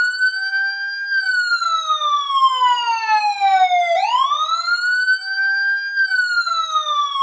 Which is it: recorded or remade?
recorded